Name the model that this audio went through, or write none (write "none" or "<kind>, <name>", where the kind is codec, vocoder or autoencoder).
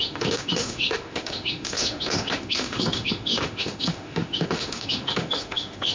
autoencoder, DAC-VAE